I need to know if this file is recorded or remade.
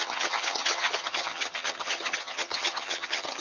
remade